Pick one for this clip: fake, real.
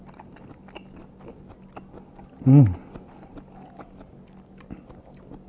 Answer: real